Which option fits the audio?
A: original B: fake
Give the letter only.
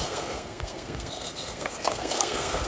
B